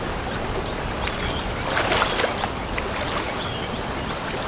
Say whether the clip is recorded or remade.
recorded